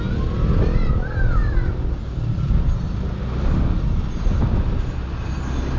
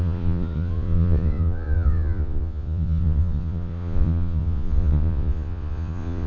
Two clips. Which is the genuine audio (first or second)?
first